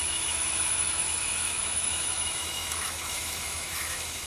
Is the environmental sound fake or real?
fake